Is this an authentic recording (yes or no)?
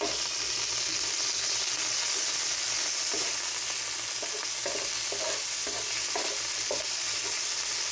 yes